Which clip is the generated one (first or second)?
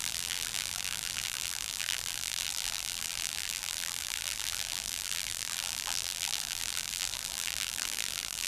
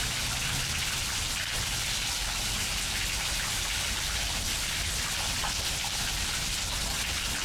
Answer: first